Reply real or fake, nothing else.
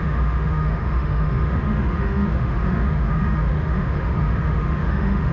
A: fake